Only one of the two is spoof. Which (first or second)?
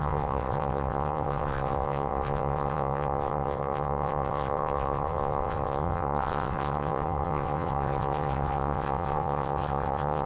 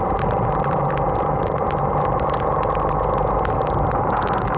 first